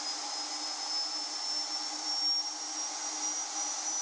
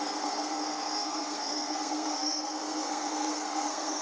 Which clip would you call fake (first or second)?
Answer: second